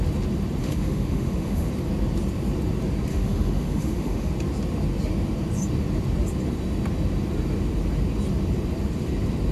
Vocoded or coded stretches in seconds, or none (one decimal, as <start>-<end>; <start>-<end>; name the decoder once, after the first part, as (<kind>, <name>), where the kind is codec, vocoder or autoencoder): 0.6-1.7 (autoencoder, DAC-VAE); 3.1-4.3